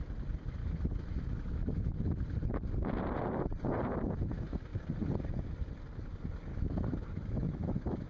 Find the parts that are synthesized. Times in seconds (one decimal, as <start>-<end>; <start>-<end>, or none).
0.6-2.1; 6.5-8.1